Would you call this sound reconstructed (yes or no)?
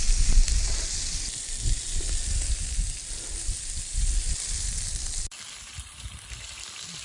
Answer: no